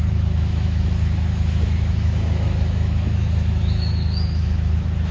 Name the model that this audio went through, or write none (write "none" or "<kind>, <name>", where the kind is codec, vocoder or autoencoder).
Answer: autoencoder, DAC-VAE